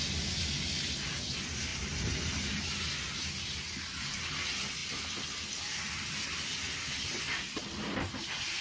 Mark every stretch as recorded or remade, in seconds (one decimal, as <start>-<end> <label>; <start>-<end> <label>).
0.0-8.6 recorded